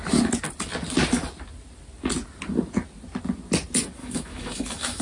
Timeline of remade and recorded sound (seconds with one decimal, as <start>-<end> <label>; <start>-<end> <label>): 0.0-4.0 recorded; 4.0-5.0 remade